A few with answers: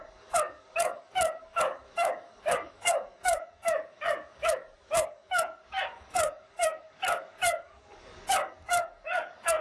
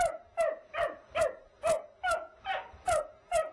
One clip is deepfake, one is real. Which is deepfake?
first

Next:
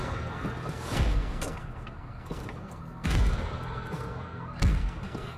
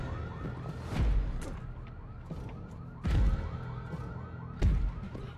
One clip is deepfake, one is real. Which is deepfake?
first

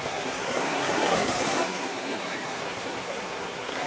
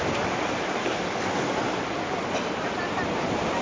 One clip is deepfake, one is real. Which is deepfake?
first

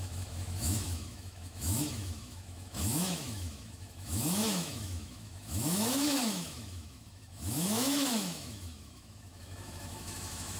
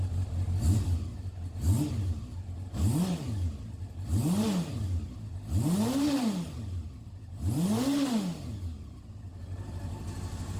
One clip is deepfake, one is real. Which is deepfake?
first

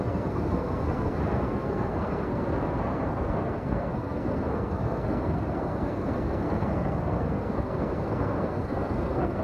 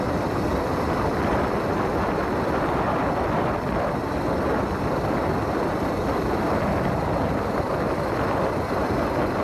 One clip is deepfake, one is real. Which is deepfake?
first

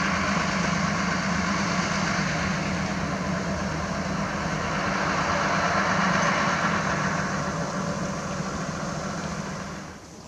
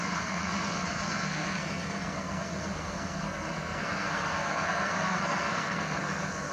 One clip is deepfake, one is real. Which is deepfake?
second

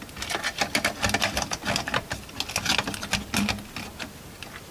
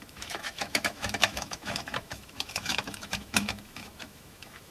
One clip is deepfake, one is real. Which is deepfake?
second